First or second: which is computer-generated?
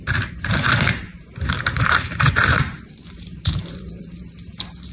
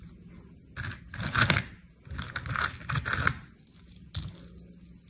first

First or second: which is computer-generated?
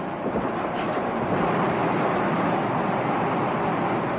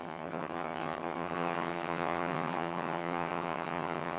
second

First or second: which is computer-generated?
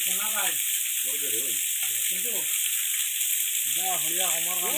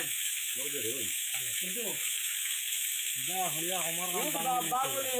second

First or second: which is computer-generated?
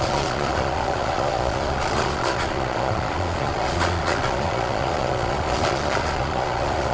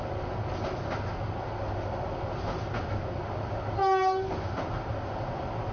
first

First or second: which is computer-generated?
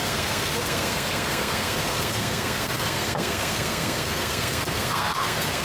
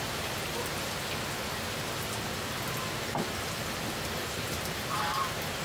first